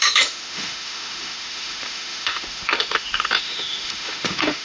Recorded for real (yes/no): no